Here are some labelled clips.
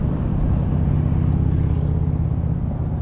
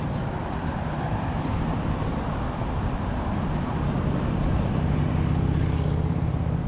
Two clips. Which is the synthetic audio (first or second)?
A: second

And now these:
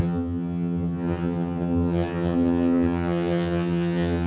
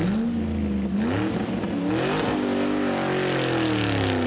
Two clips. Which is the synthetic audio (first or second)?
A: first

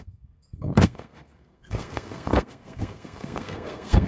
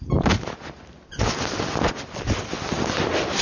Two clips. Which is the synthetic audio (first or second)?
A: first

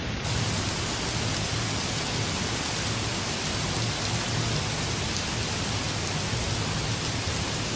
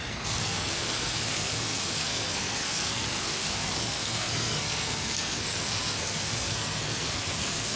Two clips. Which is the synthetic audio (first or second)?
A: second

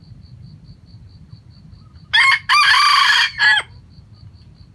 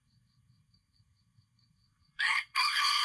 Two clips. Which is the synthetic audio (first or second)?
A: second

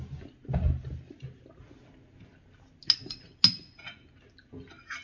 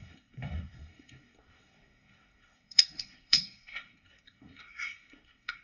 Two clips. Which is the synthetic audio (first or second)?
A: second